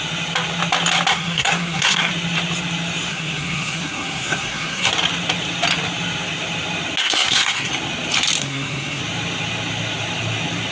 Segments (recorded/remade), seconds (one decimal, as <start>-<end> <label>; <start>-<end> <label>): 0.0-1.1 recorded; 1.1-2.1 remade; 2.1-3.1 recorded; 3.1-4.9 remade; 4.9-7.0 recorded; 7.0-7.7 remade; 7.7-8.4 recorded; 8.4-9.0 remade; 9.0-10.7 recorded